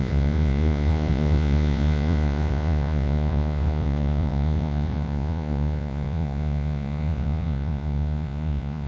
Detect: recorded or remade remade